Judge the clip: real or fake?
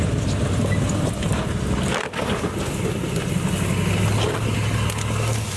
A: real